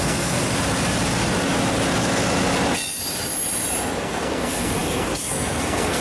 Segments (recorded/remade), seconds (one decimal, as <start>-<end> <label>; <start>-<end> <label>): 0.0-0.4 remade; 0.4-4.0 recorded; 4.0-6.0 remade

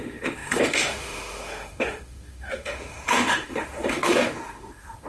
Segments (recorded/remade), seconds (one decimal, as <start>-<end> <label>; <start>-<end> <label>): 0.0-5.1 remade

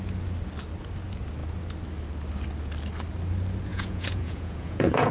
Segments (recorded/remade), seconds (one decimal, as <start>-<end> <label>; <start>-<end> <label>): 0.0-3.7 recorded; 3.7-5.1 remade

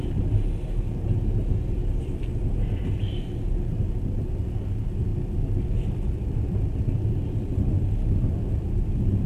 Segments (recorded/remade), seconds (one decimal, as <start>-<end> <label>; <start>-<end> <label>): 0.0-9.3 recorded

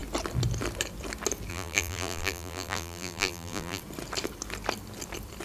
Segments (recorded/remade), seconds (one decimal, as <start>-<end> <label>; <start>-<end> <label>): 0.0-1.5 recorded; 1.5-3.8 remade; 3.8-5.4 recorded